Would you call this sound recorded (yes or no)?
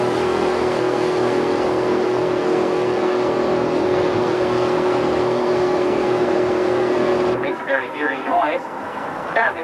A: no